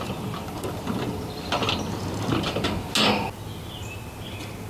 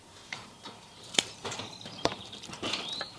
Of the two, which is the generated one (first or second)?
second